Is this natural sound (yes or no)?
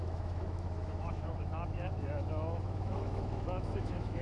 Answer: no